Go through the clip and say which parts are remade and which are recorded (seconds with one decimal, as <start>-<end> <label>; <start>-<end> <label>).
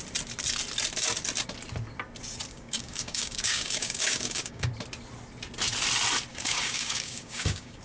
0.0-2.5 recorded; 2.5-4.7 remade; 4.7-6.3 recorded; 6.3-7.8 remade